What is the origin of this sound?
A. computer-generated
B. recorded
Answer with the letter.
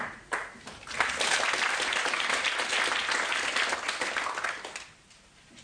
B